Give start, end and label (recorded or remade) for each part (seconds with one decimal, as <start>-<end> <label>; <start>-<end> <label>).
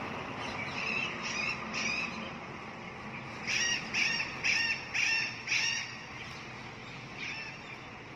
0.0-6.8 recorded; 6.8-7.3 remade; 7.3-8.2 recorded